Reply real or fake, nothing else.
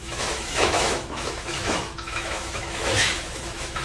fake